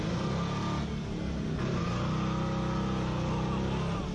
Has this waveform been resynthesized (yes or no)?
no